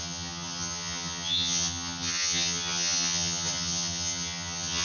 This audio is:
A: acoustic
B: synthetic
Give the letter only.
B